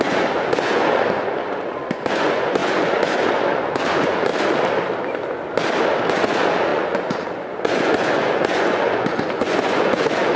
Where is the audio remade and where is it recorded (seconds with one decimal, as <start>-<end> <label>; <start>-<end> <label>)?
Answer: 0.0-4.3 remade; 4.3-6.1 recorded; 6.1-10.4 remade